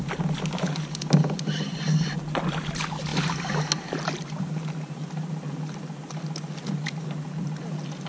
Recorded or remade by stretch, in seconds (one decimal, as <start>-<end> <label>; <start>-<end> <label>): 0.0-8.1 recorded